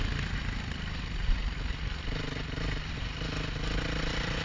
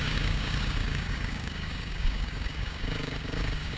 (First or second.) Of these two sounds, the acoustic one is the first